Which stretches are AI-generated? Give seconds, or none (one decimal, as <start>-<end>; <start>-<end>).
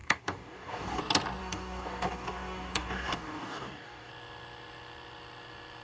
0.0-1.0; 1.4-4.1